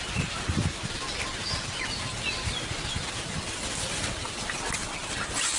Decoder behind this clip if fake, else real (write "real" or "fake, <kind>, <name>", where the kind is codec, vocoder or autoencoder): real